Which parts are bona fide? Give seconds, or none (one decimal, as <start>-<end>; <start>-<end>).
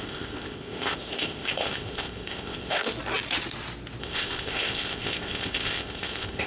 2.8-4.0